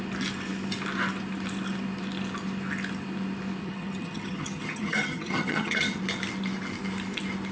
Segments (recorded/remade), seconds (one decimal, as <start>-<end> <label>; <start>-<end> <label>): 0.0-3.6 recorded; 3.6-6.0 remade; 6.0-7.5 recorded